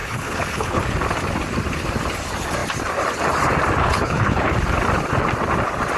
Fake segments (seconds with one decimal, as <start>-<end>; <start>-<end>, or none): 0.0-0.8; 3.8-4.5